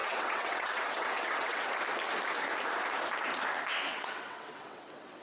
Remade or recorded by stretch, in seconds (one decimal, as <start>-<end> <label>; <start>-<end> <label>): 0.0-1.7 remade; 1.7-3.9 recorded; 3.9-5.2 remade